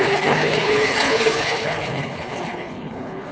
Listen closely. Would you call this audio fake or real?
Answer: fake